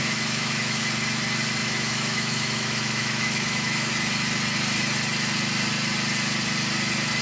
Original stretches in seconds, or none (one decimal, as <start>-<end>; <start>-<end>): 0.8-1.6; 3.9-7.2